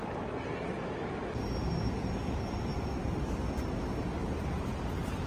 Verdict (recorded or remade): recorded